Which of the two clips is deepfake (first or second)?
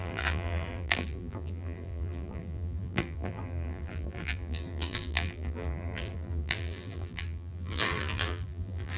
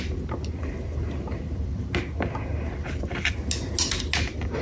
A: first